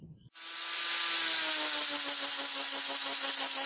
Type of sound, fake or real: real